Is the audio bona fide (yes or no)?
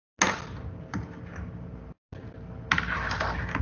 yes